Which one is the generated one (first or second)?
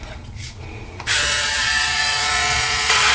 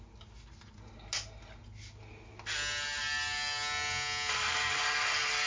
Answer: first